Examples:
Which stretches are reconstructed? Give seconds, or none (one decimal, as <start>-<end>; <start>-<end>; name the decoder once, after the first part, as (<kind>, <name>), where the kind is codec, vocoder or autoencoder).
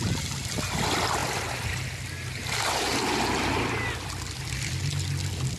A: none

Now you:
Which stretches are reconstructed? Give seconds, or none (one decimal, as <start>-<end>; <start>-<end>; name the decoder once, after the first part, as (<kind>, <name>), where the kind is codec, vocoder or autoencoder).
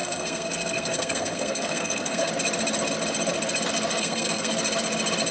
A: 0.0-2.3 (codec, SNAC); 3.9-4.5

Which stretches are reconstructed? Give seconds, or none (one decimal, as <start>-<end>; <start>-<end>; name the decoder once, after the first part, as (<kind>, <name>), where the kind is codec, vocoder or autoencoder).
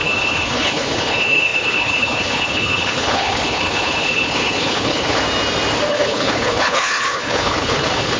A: 0.0-5.2 (codec, HILCodec); 5.9-8.2